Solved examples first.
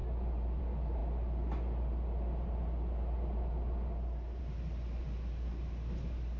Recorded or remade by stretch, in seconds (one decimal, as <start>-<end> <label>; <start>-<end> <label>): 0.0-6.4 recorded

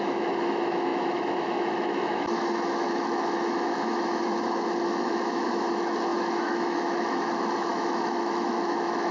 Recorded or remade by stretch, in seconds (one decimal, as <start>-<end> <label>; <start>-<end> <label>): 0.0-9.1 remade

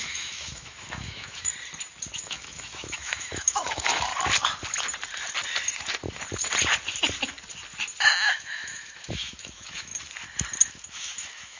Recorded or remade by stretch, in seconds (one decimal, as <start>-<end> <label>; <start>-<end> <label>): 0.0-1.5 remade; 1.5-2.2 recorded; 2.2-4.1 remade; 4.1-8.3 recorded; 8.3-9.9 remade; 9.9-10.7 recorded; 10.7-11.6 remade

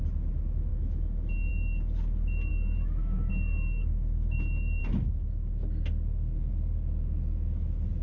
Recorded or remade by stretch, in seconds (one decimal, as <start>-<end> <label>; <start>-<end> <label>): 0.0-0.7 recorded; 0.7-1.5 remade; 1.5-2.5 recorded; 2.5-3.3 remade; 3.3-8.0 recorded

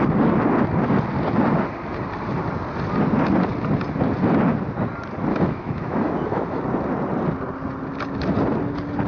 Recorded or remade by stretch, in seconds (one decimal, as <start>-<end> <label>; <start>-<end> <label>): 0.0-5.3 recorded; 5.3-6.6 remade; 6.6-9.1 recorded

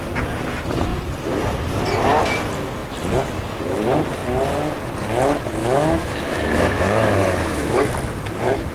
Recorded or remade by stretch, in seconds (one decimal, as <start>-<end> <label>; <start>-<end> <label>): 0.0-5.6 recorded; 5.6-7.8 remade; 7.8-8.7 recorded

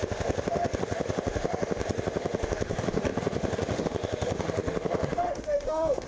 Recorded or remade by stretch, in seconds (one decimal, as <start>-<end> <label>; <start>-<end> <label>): 0.0-6.1 remade